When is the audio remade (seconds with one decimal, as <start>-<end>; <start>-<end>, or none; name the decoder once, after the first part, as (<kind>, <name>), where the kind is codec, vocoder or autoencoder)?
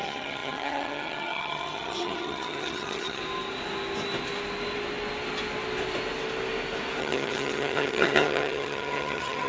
0.0-3.2 (vocoder, HiFi-GAN); 7.0-9.5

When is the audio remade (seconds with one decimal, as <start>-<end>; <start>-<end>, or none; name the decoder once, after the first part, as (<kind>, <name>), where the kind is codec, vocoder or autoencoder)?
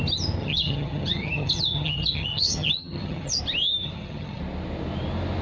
0.4-3.4 (vocoder, HiFi-GAN); 3.8-4.4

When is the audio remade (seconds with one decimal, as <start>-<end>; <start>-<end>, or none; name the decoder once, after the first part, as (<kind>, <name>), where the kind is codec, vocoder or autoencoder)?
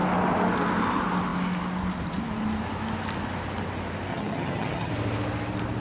4.1-4.9 (vocoder, HiFi-GAN)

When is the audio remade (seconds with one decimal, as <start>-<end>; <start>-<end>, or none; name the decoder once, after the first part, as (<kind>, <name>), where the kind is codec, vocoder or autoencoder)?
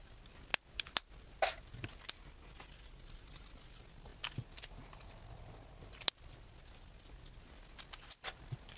none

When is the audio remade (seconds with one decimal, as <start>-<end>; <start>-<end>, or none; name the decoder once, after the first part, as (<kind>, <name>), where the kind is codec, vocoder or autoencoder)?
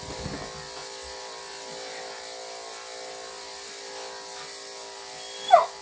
none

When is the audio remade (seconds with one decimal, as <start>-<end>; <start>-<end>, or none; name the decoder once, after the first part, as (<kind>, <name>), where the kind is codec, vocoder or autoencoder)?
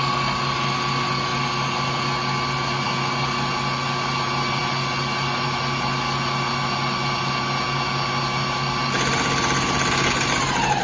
none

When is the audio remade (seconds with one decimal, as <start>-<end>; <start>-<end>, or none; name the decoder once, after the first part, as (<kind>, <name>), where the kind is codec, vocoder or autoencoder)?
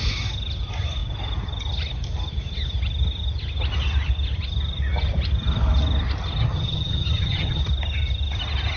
6.4-7.6 (vocoder, HiFi-GAN)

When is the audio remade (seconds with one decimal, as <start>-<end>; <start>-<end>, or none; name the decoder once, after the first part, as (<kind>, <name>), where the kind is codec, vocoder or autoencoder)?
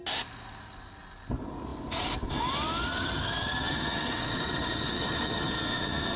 2.9-6.2 (vocoder, HiFi-GAN)